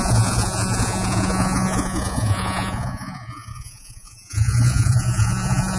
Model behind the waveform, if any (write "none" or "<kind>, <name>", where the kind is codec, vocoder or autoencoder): vocoder, Vocos